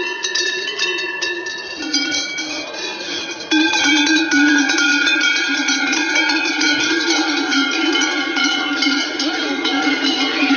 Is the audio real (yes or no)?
no